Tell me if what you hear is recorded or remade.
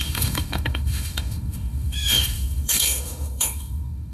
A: remade